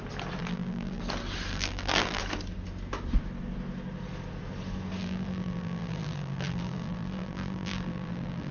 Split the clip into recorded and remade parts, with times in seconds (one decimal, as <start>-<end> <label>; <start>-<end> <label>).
0.0-0.4 recorded; 0.4-1.0 remade; 1.0-1.5 recorded; 1.5-2.2 remade; 2.2-5.0 recorded; 5.0-8.5 remade